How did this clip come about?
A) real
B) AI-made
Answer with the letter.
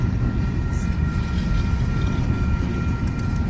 A